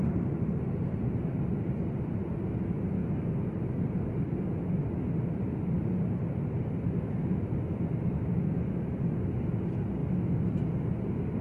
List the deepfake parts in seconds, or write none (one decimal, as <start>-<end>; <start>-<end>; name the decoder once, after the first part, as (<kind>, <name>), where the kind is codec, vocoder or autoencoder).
none